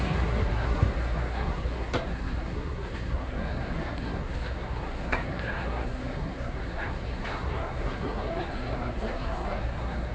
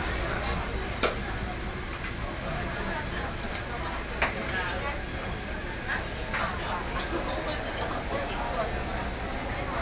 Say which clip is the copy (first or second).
first